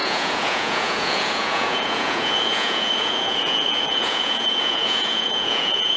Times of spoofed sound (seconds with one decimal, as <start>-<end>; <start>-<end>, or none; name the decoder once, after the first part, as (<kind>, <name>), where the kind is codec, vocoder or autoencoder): 0.0-6.0 (vocoder, Vocos)